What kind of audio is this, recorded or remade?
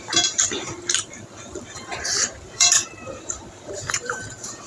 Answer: remade